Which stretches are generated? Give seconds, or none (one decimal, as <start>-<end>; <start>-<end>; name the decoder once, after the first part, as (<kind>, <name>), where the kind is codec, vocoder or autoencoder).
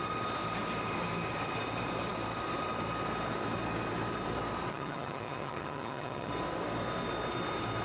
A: 4.7-6.3 (vocoder, HiFi-GAN)